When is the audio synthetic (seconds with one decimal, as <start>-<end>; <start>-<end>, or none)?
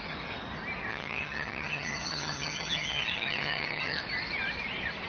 0.9-4.0